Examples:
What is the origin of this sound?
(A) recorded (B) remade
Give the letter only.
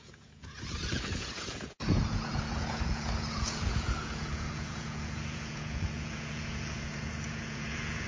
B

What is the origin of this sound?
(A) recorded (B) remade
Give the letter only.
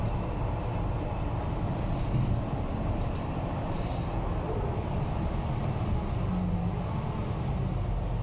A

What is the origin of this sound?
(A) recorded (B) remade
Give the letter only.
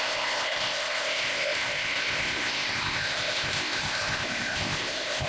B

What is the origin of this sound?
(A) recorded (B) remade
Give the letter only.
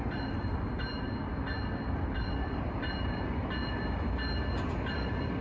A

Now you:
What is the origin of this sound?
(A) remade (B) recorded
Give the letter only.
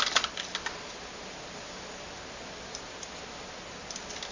B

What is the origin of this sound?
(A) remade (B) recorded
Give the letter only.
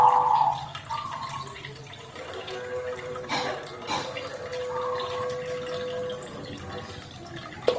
B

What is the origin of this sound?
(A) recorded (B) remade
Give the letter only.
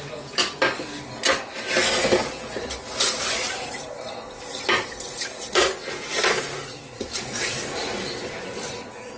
A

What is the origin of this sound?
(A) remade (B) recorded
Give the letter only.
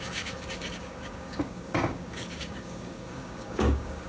A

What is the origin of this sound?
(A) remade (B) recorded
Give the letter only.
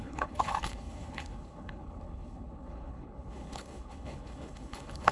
A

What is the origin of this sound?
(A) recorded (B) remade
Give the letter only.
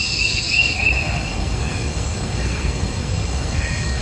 B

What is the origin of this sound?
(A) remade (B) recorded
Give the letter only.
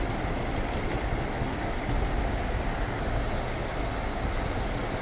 B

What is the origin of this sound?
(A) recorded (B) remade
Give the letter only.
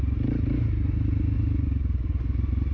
A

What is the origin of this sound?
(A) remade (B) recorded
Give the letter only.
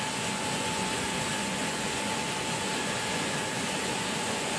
A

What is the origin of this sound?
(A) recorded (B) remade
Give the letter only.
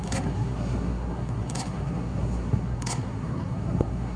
B